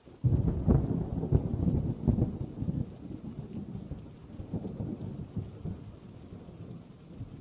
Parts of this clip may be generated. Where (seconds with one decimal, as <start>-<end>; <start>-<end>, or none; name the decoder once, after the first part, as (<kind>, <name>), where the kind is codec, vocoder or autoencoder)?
none